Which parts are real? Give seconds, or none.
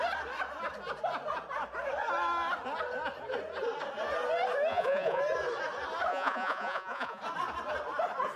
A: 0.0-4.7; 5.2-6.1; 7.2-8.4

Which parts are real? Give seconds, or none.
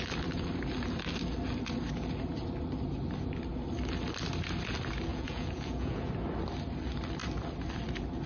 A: 0.0-5.1; 6.1-8.3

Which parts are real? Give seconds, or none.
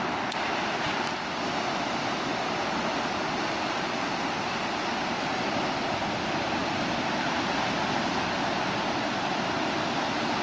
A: 0.0-10.4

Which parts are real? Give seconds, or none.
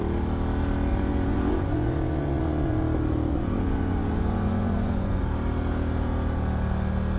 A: 0.0-0.9; 2.8-3.3; 5.2-7.2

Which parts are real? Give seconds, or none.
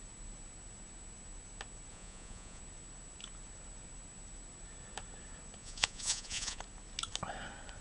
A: 0.0-1.9; 2.6-5.6; 6.6-7.8